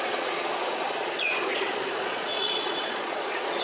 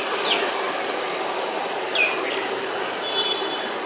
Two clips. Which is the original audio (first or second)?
second